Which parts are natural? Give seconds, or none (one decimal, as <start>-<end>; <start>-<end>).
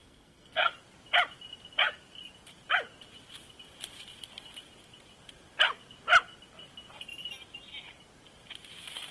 0.7-9.1